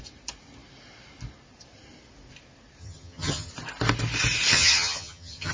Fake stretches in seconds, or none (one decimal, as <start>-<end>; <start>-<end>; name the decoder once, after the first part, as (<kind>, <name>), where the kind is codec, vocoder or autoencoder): 2.8-3.5 (vocoder, HiFi-GAN); 4.5-5.5